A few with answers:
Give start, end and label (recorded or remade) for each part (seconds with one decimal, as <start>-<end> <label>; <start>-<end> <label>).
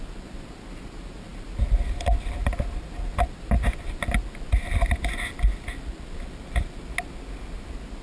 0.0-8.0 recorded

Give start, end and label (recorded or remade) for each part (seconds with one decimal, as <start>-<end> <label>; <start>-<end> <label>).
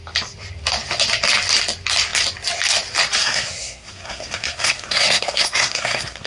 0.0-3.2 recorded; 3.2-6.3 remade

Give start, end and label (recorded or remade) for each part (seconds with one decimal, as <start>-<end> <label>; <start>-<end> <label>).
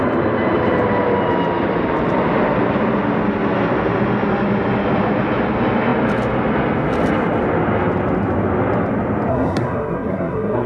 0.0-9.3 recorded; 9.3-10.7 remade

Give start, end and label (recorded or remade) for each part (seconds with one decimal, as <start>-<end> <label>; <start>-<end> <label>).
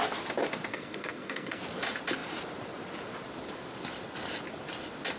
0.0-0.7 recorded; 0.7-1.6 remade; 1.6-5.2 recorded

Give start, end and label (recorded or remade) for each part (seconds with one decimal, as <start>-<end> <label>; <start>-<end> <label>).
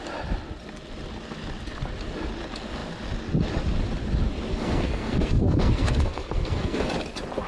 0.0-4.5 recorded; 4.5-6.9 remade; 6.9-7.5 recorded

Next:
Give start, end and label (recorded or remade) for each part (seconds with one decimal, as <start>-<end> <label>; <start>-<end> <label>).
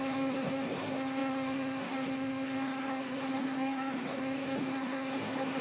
0.0-5.6 remade